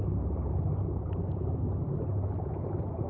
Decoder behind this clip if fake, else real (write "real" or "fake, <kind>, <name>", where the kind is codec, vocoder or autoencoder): real